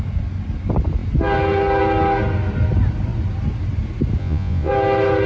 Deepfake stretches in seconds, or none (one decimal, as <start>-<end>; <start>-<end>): 4.2-4.7